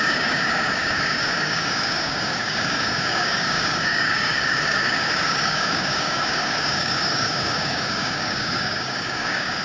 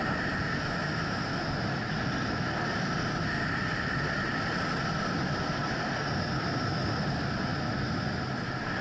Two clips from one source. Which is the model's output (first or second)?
first